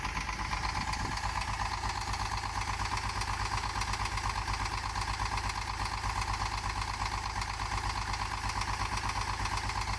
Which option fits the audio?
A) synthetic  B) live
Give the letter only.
B